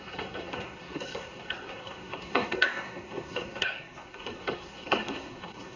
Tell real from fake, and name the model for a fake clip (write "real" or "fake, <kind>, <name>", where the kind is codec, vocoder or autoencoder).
fake, codec, SNAC